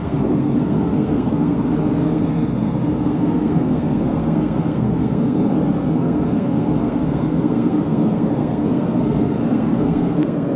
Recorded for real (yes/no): no